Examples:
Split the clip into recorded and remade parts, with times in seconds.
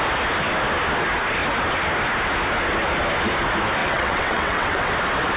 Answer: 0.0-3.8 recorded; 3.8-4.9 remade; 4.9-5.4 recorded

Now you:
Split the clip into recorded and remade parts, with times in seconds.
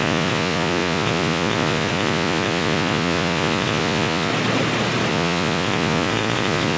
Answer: 0.0-4.3 remade; 4.3-5.1 recorded; 5.1-6.8 remade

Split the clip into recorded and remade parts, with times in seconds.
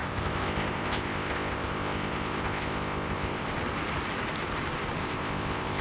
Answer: 0.0-3.5 remade; 3.5-5.0 recorded; 5.0-5.8 remade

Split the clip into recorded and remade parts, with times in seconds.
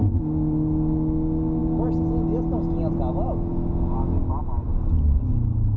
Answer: 0.0-5.8 recorded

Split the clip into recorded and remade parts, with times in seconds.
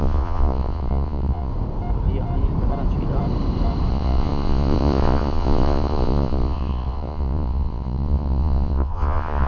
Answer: 0.0-1.5 remade; 1.5-3.9 recorded; 3.9-9.5 remade